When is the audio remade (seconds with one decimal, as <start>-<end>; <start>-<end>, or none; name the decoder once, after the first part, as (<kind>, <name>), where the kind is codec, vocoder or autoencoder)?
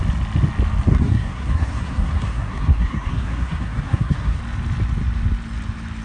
0.9-4.4 (codec, SNAC)